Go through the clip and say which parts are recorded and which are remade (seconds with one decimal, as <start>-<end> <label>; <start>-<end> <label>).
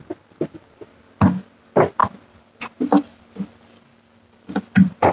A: 0.0-5.1 recorded